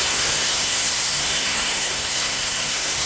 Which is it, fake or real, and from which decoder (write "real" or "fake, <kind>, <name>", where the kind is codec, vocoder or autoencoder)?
fake, codec, SNAC